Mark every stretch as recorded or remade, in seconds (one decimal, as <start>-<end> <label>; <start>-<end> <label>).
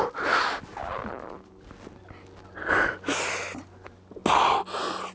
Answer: 0.0-5.1 recorded